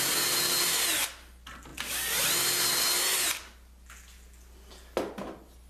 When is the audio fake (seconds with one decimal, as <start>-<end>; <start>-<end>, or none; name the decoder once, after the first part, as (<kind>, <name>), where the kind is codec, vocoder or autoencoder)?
none